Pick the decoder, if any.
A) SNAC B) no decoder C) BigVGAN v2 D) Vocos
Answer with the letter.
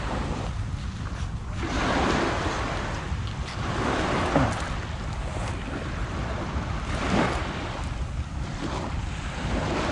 B